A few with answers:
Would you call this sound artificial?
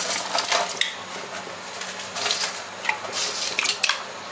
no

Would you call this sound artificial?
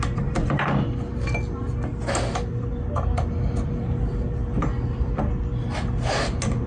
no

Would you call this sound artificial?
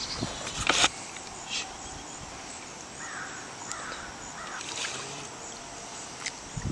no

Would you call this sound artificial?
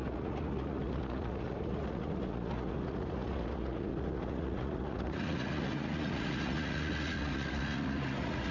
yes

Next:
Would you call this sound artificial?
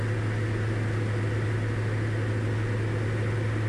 no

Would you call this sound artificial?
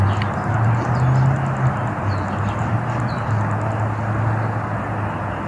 no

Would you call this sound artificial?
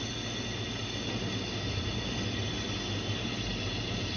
no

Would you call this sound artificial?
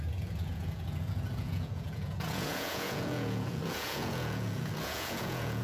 yes